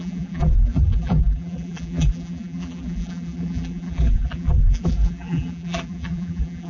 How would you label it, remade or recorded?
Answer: remade